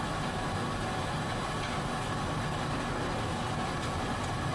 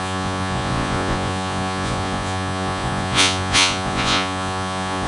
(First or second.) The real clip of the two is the first